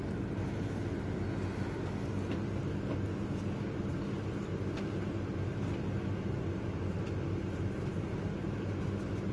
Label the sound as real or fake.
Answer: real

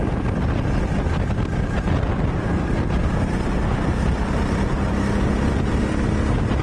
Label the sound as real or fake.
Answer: real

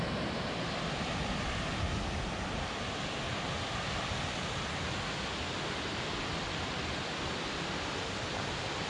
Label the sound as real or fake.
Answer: real